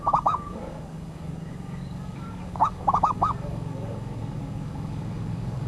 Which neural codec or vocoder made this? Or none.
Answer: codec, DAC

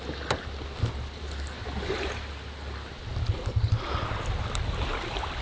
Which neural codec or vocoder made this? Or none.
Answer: none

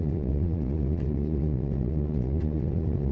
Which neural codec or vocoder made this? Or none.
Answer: vocoder, Vocos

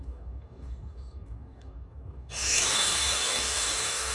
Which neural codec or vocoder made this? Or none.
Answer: codec, DAC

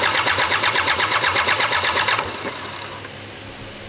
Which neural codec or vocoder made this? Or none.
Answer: none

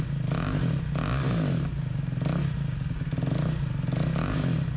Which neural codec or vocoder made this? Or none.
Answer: none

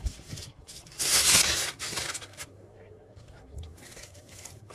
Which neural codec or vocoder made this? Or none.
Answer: codec, SNAC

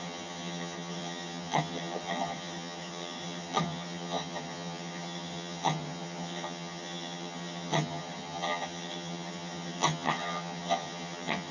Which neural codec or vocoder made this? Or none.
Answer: vocoder, HiFi-GAN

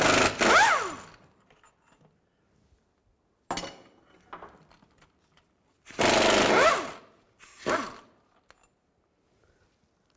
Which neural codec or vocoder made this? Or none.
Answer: none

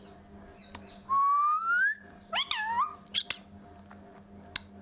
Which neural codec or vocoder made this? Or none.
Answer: none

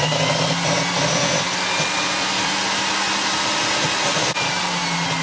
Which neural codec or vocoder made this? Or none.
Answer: none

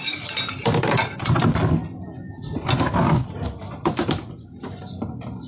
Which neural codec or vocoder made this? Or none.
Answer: none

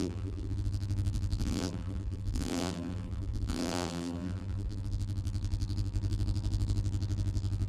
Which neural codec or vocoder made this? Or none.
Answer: vocoder, BigVGAN v2